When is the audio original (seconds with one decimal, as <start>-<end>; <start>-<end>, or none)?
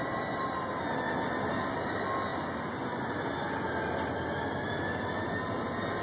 0.0-6.0